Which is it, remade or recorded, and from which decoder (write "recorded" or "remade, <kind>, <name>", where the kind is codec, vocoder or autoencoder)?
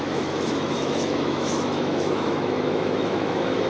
remade, autoencoder, DAC-VAE